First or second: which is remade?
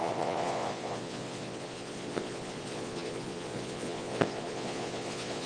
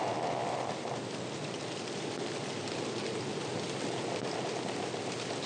first